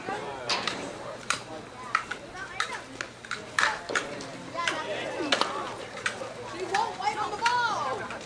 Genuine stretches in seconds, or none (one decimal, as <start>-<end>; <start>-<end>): 0.0-0.5; 1.5-8.3